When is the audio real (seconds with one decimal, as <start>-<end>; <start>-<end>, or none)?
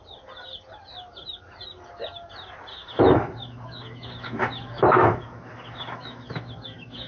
0.0-2.7